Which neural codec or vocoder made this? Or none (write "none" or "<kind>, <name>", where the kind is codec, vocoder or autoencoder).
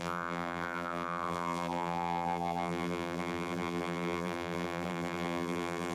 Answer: vocoder, BigVGAN v2